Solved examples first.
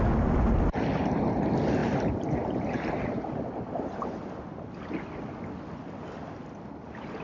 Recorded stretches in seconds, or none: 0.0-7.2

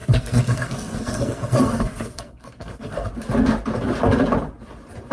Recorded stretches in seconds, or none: 3.1-5.1

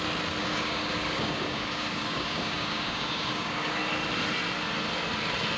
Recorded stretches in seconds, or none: 0.0-0.4; 3.8-5.6